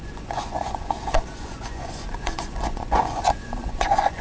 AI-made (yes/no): yes